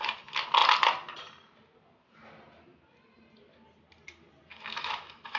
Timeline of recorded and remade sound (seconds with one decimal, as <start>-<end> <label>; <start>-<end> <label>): 0.0-4.5 recorded; 4.5-5.4 remade